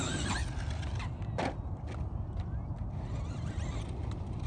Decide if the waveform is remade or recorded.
recorded